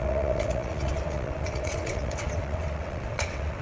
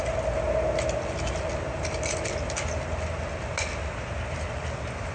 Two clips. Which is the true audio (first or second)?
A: second